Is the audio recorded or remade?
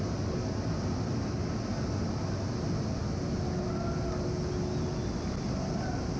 recorded